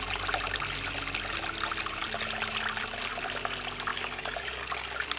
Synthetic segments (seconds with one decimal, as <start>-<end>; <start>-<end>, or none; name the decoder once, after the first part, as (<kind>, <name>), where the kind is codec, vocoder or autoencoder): 3.9-4.7 (codec, DAC)